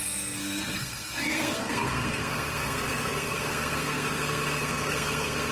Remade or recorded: remade